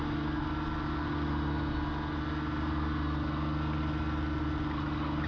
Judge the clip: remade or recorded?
recorded